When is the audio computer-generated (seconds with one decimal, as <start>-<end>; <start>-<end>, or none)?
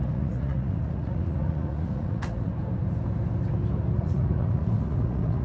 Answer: 0.0-2.5; 4.0-5.4